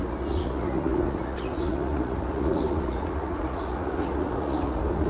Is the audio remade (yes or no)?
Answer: yes